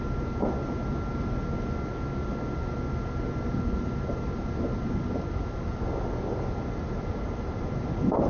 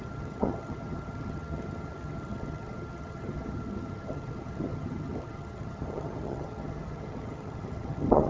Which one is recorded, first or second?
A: first